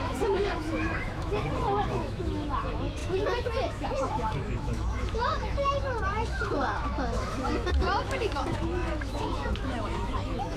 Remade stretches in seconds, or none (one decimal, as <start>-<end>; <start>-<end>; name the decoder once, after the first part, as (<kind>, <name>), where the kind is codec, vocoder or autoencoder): 0.0-10.6 (autoencoder, DAC-VAE)